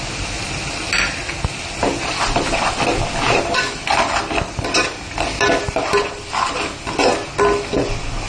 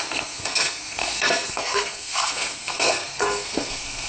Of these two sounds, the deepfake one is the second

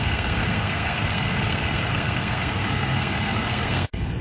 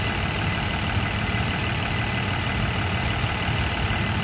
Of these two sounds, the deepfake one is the first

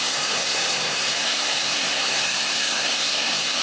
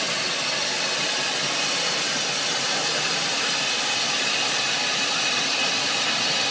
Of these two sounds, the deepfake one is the first